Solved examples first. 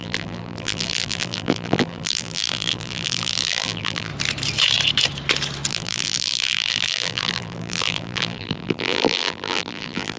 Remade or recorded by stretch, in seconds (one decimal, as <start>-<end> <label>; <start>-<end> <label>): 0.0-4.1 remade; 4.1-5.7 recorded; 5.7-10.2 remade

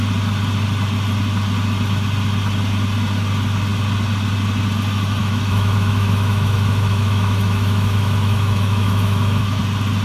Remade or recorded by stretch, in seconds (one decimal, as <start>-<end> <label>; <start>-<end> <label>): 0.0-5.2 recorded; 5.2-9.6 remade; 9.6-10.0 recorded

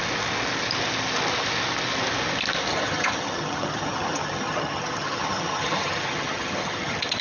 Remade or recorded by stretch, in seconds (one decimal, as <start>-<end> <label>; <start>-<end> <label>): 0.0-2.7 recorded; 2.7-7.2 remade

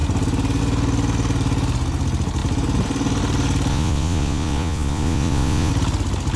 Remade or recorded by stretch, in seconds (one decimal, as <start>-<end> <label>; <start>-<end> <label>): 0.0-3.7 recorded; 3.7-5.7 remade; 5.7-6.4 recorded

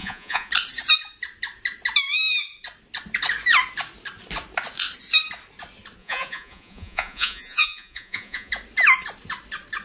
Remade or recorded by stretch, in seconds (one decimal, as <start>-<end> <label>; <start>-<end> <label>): 0.0-0.5 remade; 0.5-6.0 recorded; 6.0-8.5 remade; 8.5-9.8 recorded

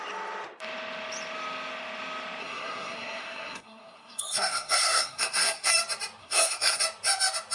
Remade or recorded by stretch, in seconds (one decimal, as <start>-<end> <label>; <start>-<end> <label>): 0.0-2.4 recorded; 2.4-5.7 remade; 5.7-6.2 recorded; 6.2-6.8 remade; 6.8-7.5 recorded

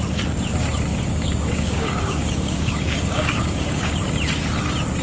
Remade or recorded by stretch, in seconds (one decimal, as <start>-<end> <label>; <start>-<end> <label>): 0.0-0.9 recorded; 0.9-3.9 remade; 3.9-5.0 recorded